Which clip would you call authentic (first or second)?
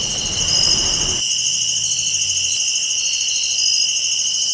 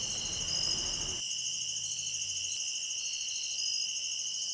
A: second